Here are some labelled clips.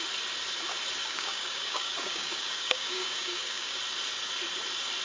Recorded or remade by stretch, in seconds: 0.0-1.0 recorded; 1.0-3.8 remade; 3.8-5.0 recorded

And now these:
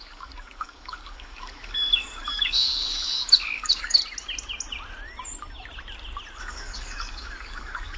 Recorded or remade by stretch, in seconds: 0.0-4.0 remade; 4.0-6.4 recorded; 6.4-8.0 remade

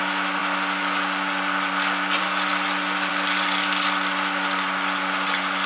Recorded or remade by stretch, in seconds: 0.0-5.7 recorded

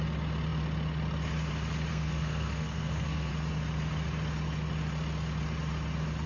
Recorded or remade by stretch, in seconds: 0.0-1.9 recorded; 1.9-3.3 remade; 3.3-6.3 recorded

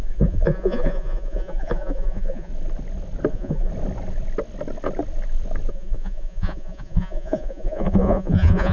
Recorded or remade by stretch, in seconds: 0.0-2.5 remade; 2.5-3.3 recorded; 3.3-3.7 remade; 3.7-5.7 recorded; 5.7-8.7 remade